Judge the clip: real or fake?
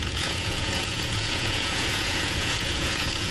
fake